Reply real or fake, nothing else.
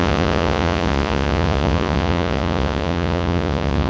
fake